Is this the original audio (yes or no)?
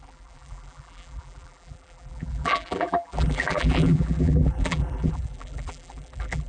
no